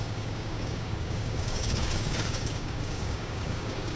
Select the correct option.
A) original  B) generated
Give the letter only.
B